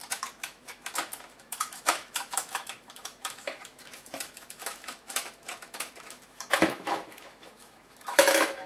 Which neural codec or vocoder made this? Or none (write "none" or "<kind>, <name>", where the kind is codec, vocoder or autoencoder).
autoencoder, DAC-VAE